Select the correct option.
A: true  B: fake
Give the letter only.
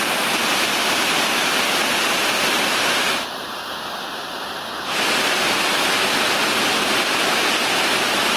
A